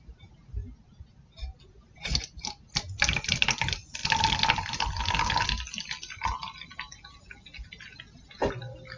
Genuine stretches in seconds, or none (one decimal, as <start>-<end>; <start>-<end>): 0.0-9.0